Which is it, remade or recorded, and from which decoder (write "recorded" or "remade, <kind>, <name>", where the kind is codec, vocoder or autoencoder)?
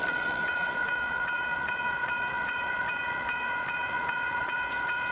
remade, vocoder, Vocos